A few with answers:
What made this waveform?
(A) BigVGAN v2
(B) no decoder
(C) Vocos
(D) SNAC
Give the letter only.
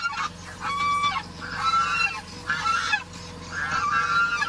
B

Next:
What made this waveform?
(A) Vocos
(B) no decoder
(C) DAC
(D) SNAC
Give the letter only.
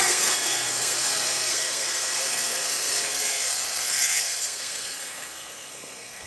D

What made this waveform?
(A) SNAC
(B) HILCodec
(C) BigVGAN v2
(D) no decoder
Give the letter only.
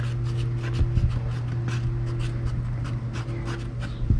D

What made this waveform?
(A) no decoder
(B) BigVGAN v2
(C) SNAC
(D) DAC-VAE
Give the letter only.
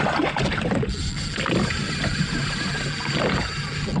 A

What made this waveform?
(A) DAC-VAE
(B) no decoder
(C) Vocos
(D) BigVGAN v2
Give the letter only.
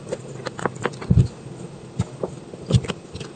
B